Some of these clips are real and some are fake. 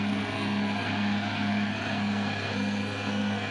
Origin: fake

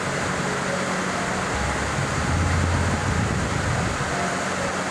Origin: real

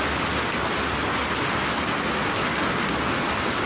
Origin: real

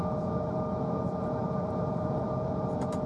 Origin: fake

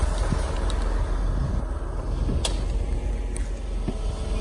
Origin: real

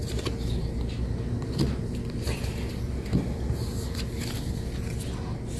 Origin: real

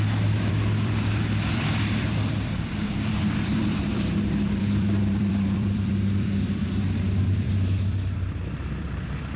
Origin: fake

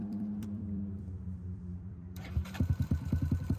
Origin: fake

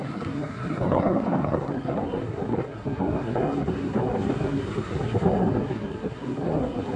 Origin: fake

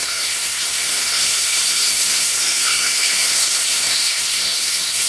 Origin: fake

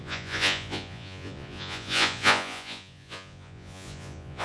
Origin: fake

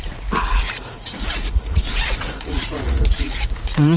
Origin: fake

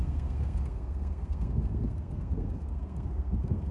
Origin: fake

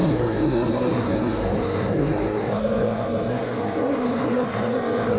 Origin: fake